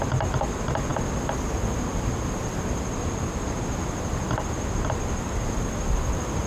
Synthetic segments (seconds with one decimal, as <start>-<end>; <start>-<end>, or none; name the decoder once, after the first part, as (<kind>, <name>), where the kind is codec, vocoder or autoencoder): none

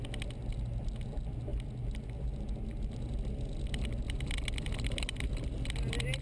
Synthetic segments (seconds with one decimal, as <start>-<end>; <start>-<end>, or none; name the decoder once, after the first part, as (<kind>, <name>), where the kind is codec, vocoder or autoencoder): none

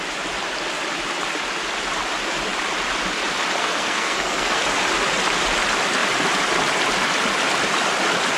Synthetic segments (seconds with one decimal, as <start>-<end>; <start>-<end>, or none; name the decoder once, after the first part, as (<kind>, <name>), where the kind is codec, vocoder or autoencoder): 3.6-4.6 (codec, SNAC)